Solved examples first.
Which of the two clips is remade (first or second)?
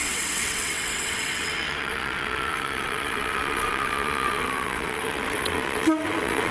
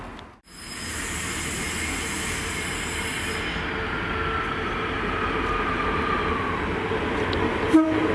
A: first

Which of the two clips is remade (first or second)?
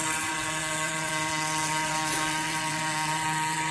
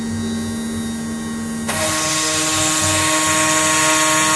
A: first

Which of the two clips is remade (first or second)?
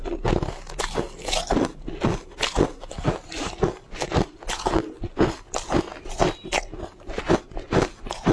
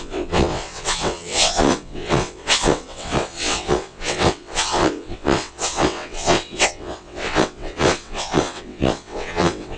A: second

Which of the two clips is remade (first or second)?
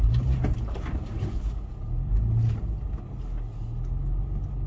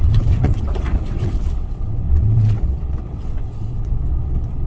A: second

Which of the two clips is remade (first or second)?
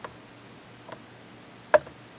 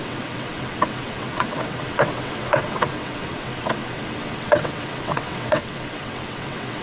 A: second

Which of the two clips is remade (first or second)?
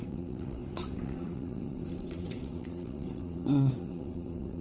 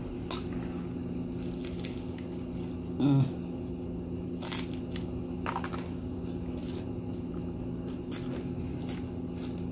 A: first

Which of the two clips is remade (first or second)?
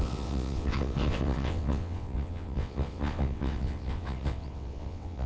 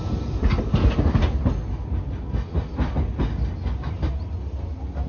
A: first